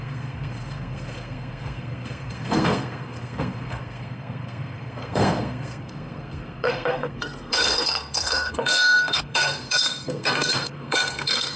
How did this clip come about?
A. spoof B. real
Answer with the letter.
A